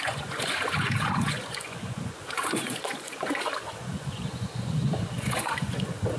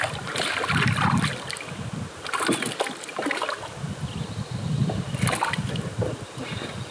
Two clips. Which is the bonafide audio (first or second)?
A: second